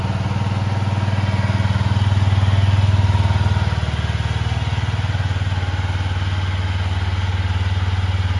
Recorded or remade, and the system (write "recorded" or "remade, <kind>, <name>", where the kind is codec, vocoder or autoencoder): recorded